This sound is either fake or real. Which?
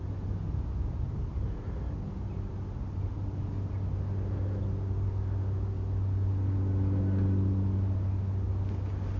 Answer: real